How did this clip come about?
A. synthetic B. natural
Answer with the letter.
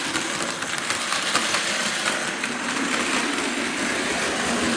A